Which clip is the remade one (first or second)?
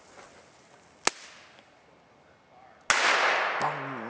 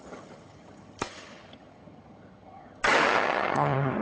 second